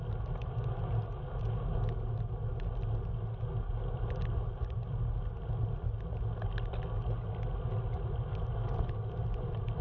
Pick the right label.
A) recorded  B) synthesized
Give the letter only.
A